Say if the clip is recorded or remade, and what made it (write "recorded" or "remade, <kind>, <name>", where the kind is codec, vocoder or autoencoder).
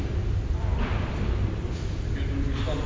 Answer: recorded